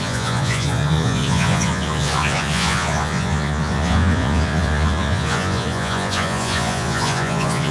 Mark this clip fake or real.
fake